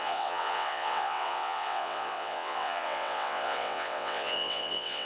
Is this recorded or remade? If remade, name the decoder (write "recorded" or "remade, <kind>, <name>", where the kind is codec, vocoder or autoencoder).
remade, vocoder, WaveNeXt